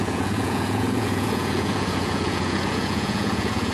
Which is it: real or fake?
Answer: fake